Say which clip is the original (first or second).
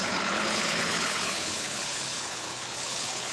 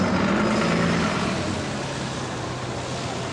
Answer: second